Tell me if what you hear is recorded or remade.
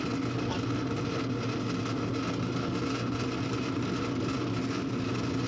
recorded